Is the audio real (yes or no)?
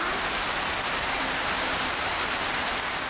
yes